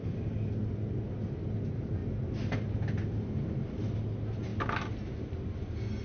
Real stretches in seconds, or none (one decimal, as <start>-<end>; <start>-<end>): 0.0-6.0